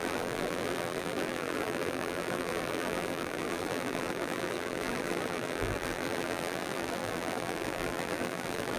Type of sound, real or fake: fake